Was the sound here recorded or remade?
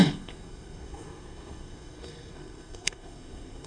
remade